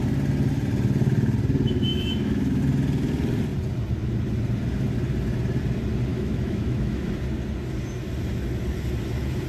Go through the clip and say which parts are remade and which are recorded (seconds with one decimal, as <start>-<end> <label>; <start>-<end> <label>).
0.0-1.9 recorded; 1.9-2.6 remade; 2.6-6.1 recorded; 6.1-7.1 remade; 7.1-9.5 recorded